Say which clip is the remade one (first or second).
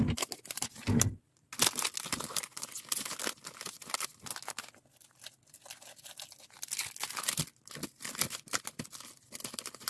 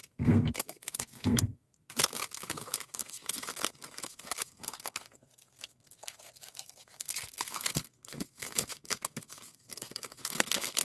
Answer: second